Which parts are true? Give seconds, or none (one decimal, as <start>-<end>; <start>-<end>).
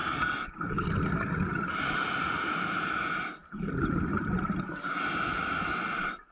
0.0-6.3